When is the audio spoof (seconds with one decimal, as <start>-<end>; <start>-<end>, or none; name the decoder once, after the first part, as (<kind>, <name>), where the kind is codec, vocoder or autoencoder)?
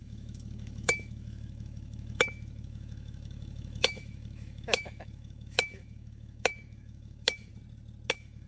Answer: 0.0-7.5 (autoencoder, DAC-VAE); 8.1-8.5